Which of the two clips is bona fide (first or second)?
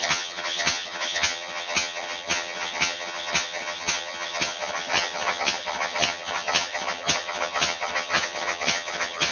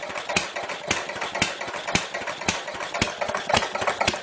second